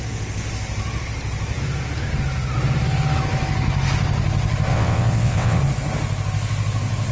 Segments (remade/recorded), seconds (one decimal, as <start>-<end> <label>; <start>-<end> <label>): 0.0-4.7 recorded; 4.7-5.6 remade; 5.6-7.1 recorded